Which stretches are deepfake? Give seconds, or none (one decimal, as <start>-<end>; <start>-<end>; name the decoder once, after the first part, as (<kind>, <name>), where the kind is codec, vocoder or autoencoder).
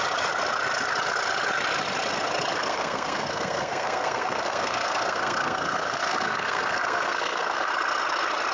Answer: 2.6-7.7 (codec, SNAC)